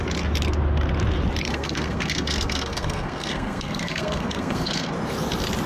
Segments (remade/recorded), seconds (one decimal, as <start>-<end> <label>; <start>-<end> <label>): 0.0-1.5 recorded; 1.5-4.9 remade; 4.9-5.7 recorded

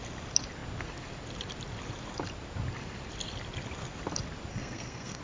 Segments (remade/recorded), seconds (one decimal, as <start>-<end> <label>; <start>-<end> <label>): 0.0-4.5 recorded; 4.5-5.2 remade

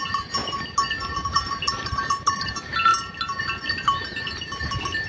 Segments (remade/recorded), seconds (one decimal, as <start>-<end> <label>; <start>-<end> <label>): 0.0-5.1 recorded

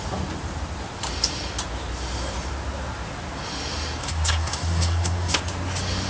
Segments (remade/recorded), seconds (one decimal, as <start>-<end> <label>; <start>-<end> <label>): 0.0-4.0 recorded; 4.0-5.4 remade; 5.4-6.1 recorded

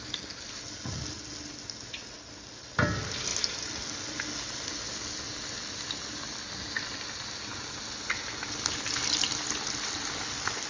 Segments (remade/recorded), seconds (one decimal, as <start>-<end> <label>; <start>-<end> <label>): 0.0-10.7 recorded

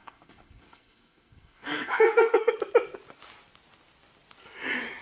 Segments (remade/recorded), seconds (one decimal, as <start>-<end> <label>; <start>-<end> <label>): 0.0-2.5 remade; 2.5-5.0 recorded

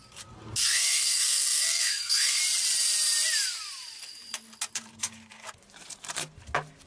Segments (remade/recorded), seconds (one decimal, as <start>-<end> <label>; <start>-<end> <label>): 0.0-0.6 recorded; 0.6-2.4 remade; 2.4-6.9 recorded

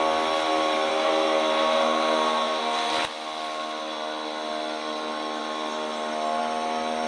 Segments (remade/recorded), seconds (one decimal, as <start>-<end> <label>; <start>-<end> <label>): 0.0-0.9 recorded; 0.9-2.9 remade; 2.9-7.1 recorded